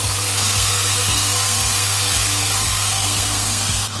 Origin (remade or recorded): remade